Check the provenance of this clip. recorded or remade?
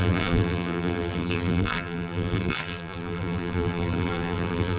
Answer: remade